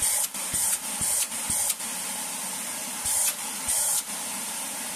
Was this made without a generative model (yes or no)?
yes